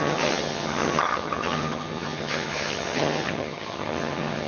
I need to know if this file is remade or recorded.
remade